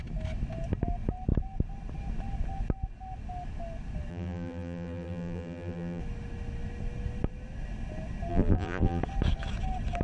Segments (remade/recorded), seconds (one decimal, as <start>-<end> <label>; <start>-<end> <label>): 0.0-4.1 recorded; 4.1-6.0 remade; 6.0-8.3 recorded; 8.3-9.0 remade; 9.0-10.0 recorded